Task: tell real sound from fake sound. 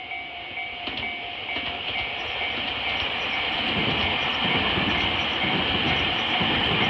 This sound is real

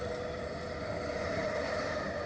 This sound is real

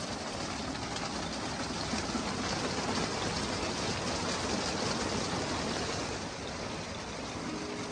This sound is real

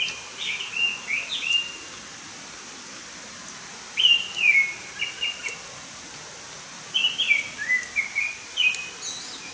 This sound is real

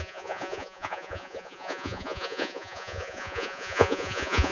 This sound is fake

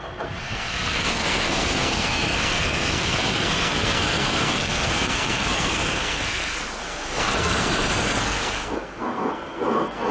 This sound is fake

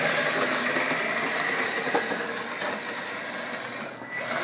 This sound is real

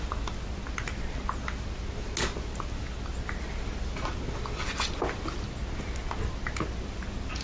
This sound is real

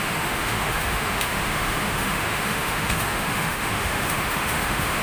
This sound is fake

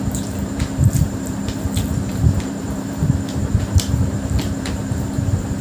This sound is fake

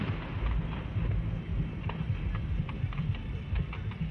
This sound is real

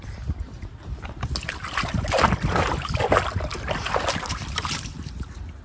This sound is real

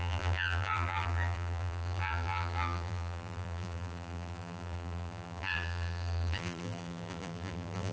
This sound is fake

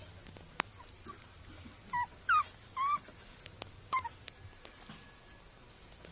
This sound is real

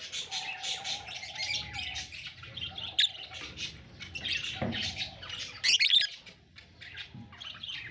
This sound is real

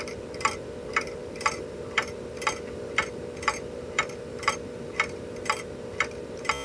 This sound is fake